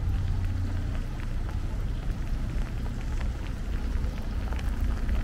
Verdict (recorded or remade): recorded